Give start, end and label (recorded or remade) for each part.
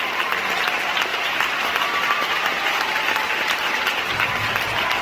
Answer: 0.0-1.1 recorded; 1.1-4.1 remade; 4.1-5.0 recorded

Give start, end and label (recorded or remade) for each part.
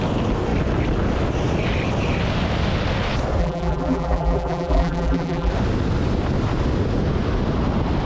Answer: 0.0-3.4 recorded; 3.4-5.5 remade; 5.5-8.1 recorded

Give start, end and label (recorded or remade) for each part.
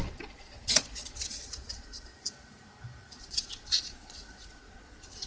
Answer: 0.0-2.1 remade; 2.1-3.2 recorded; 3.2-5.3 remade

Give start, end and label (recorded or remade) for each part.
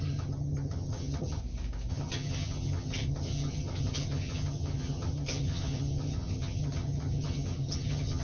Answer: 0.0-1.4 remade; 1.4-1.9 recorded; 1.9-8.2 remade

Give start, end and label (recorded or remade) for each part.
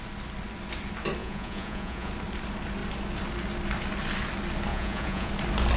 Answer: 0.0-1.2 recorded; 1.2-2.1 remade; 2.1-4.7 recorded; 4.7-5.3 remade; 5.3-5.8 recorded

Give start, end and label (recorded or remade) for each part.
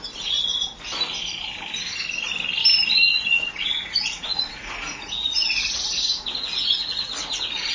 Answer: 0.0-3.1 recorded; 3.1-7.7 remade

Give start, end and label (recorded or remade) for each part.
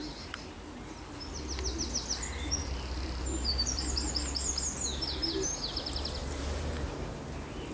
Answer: 0.0-2.6 recorded; 2.6-4.1 remade; 4.1-6.2 recorded; 6.2-7.1 remade; 7.1-7.7 recorded